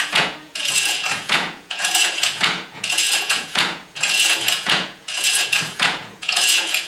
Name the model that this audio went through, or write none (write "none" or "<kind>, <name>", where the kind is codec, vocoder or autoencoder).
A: vocoder, Vocos